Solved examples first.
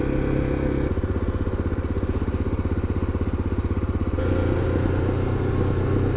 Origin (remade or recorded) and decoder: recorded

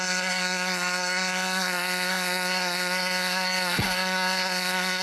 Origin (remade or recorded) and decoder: remade, codec, SNAC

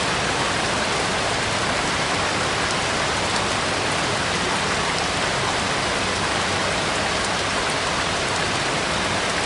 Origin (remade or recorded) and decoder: remade, vocoder, BigVGAN v2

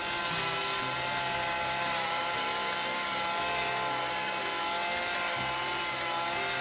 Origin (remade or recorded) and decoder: recorded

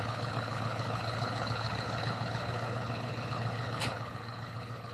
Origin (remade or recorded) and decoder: remade, codec, HILCodec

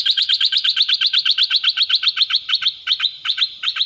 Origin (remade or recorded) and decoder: remade, vocoder, BigVGAN v2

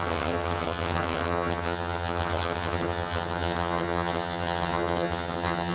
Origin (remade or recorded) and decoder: remade, vocoder, HiFi-GAN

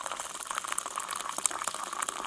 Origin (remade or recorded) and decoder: recorded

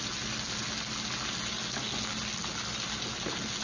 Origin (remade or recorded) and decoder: recorded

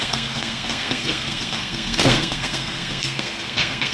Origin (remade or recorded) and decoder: remade, codec, SNAC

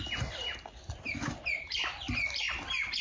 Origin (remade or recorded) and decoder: recorded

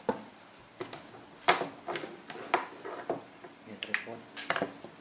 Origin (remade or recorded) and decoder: recorded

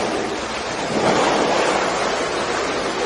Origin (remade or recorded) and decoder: recorded